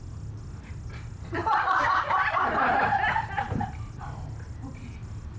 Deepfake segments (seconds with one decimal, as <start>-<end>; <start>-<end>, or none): none

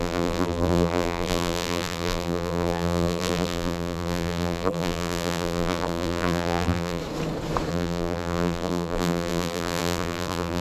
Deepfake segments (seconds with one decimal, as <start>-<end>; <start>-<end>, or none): 0.0-7.0; 7.7-10.6

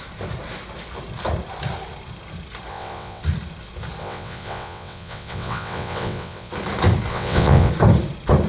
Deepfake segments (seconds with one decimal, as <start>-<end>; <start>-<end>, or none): 2.7-3.2; 4.0-6.5; 7.1-7.7

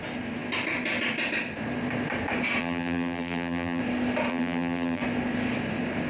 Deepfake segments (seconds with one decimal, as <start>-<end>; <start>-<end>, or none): 2.6-3.8; 4.3-5.0

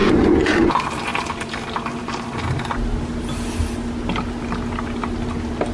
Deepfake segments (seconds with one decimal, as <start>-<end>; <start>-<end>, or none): 0.0-0.7

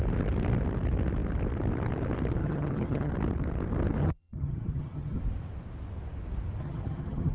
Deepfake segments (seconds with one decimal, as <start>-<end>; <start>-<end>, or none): 2.4-3.1; 4.0-5.2; 6.6-7.3

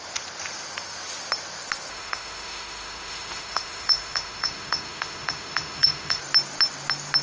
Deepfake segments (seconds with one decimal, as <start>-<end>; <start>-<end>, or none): 1.9-6.2